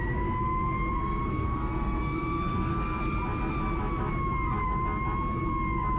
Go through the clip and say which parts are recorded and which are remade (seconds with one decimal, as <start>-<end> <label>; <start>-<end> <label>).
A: 0.0-1.0 recorded; 1.0-3.0 remade; 3.0-6.0 recorded